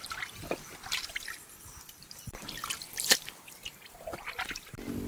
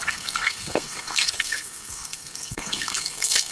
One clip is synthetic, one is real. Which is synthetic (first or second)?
second